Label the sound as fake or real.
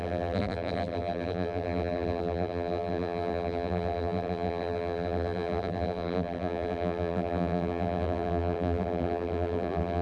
fake